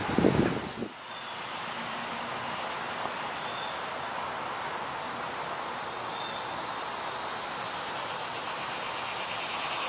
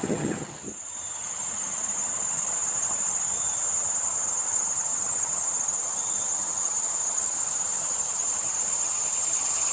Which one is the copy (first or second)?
second